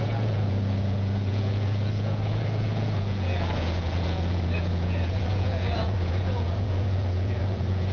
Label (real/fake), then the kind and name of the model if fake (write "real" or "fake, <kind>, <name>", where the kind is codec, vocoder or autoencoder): fake, vocoder, Vocos